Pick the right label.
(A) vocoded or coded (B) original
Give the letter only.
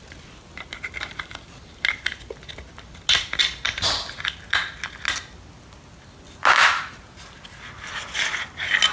B